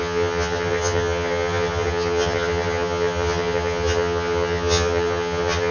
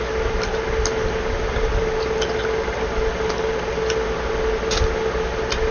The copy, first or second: first